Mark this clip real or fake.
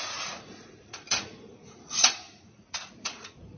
fake